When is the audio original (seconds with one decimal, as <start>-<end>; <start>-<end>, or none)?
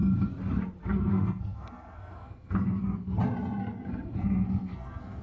0.0-0.8; 3.2-3.6